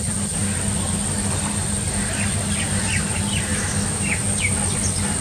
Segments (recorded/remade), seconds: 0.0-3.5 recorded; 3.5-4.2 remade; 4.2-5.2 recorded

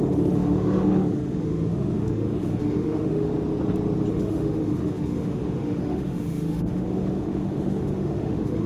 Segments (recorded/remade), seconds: 0.0-3.3 remade; 3.3-4.1 recorded; 4.1-8.7 remade